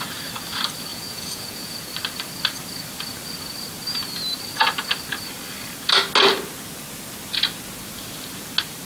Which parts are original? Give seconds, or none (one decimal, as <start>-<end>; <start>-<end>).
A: 0.0-0.9; 1.9-8.8